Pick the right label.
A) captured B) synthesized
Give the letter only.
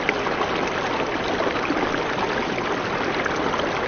A